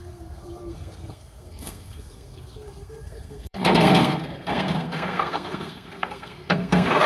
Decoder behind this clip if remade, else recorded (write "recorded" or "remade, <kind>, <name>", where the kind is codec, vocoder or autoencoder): remade, codec, SNAC